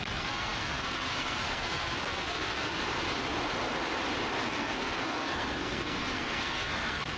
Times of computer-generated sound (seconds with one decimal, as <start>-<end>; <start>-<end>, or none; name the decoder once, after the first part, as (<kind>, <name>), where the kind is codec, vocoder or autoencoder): 0.0-2.8 (codec, SNAC); 4.4-7.2